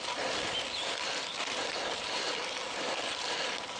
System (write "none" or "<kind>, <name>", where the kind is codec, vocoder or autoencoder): none